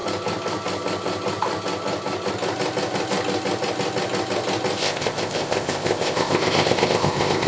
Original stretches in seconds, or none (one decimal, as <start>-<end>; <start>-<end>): 0.0-4.8